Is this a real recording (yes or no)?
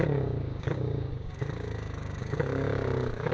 no